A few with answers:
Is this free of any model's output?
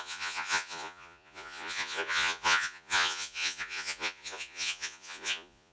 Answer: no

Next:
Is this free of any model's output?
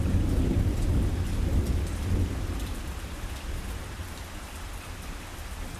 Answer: yes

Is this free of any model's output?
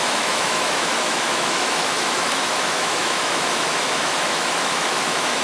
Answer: no